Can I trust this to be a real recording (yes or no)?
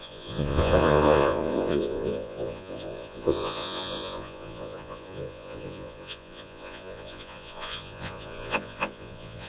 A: no